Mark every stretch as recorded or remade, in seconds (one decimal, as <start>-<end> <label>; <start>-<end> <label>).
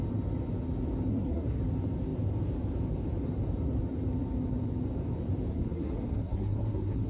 0.0-1.1 recorded; 1.1-1.6 remade; 1.6-5.5 recorded; 5.5-7.1 remade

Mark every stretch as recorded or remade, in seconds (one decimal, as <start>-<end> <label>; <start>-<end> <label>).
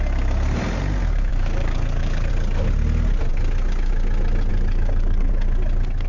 0.0-1.3 recorded; 1.3-2.3 remade; 2.3-4.5 recorded; 4.5-5.3 remade; 5.3-6.1 recorded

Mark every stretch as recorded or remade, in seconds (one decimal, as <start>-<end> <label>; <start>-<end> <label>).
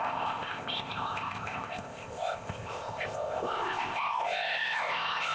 0.0-5.3 remade